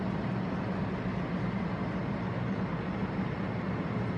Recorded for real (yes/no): yes